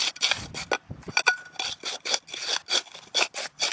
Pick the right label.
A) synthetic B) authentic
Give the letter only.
B